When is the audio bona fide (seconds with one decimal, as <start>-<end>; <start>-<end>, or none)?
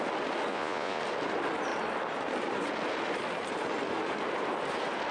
0.0-0.5; 1.0-5.1